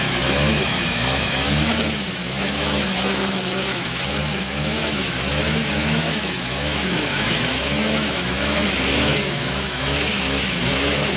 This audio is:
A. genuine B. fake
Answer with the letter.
B